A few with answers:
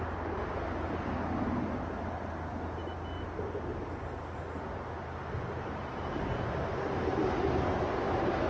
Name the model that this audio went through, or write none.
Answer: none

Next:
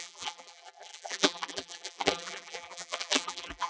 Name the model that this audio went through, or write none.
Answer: vocoder, BigVGAN v2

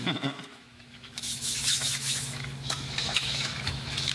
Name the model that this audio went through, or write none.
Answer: autoencoder, DAC-VAE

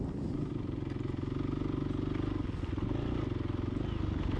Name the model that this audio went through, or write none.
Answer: none